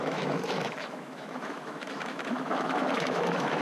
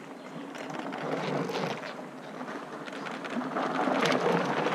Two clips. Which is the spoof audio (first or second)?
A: first